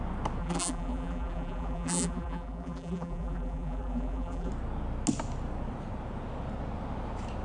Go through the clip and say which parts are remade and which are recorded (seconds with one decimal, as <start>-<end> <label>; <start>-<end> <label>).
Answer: 0.0-0.4 recorded; 0.4-4.5 remade; 4.5-7.4 recorded